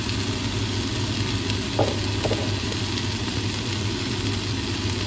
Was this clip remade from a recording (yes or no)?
no